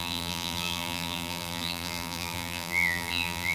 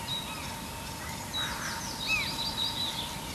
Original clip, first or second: second